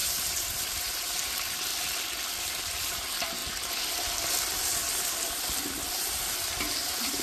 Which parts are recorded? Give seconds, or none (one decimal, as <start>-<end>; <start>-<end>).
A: 1.7-2.4; 3.4-5.9